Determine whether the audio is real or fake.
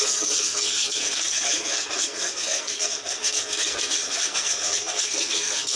fake